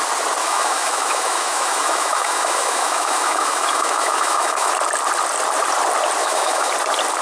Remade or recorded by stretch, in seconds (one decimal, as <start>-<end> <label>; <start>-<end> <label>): 0.0-0.4 recorded; 0.4-4.7 remade; 4.7-6.2 recorded; 6.2-6.7 remade; 6.7-7.2 recorded